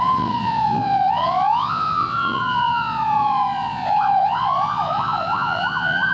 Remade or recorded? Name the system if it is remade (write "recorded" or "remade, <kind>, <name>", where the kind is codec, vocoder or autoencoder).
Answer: remade, vocoder, Vocos